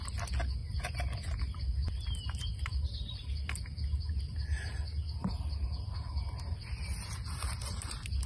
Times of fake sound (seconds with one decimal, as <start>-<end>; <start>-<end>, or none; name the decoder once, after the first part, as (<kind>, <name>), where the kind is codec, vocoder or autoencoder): none